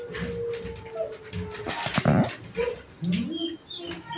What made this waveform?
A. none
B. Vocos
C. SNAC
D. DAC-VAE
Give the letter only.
A